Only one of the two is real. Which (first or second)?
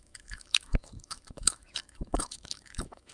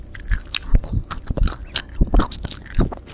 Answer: second